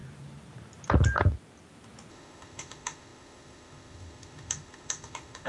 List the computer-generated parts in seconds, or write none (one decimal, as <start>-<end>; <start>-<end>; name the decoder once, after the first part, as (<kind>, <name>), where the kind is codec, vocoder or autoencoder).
2.1-5.5 (autoencoder, DAC-VAE)

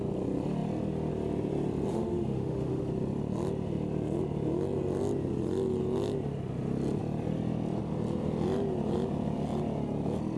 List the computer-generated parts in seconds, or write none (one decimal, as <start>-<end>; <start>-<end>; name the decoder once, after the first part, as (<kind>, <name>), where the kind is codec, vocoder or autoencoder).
1.9-2.8 (autoencoder, DAC-VAE)

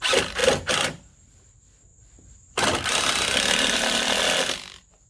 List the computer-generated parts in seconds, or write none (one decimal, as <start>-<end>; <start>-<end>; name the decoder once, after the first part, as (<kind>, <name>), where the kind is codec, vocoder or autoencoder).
none

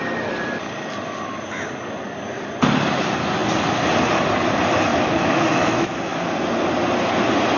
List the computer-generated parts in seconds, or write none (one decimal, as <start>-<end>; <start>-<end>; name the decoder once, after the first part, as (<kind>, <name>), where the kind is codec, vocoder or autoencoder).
4.9-6.3 (autoencoder, DAC-VAE)